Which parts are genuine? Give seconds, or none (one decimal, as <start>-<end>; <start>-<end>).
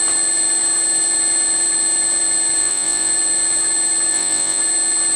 0.0-2.6; 3.1-4.1; 4.6-5.2